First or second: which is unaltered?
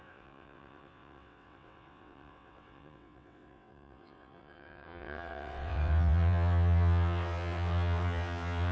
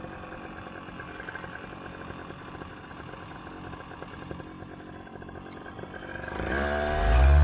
second